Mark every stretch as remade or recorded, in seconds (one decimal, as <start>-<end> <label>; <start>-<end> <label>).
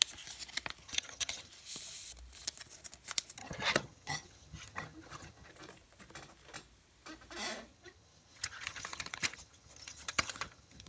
0.0-0.8 recorded; 0.8-1.5 remade; 1.5-3.4 recorded; 3.4-5.5 remade; 5.5-7.7 recorded; 7.7-10.9 remade